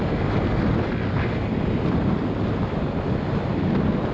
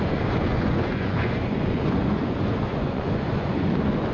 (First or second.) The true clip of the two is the first